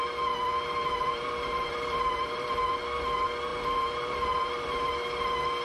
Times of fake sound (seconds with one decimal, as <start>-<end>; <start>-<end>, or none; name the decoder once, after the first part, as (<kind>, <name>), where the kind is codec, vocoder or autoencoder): 0.8-2.6 (vocoder, BigVGAN v2); 3.5-4.9